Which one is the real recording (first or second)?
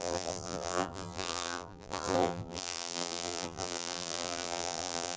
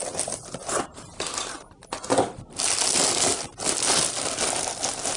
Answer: second